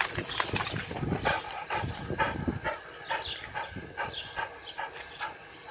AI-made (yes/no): no